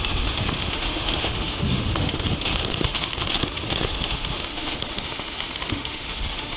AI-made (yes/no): yes